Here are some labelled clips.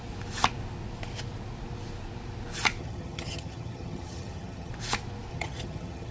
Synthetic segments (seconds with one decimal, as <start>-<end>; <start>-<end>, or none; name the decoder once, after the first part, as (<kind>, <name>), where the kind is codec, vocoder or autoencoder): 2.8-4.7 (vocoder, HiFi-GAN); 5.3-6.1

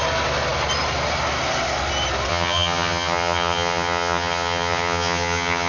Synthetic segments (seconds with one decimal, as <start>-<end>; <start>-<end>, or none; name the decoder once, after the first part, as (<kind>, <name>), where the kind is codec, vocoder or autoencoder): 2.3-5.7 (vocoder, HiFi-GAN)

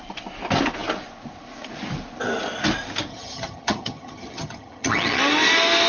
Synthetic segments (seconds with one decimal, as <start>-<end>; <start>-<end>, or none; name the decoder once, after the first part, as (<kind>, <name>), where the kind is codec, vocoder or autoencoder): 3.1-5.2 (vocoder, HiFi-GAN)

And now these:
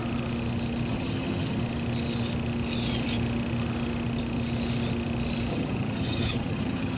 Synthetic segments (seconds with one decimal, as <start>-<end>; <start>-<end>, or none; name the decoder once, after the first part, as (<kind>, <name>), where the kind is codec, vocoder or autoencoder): 0.9-1.6 (vocoder, HiFi-GAN); 5.5-7.0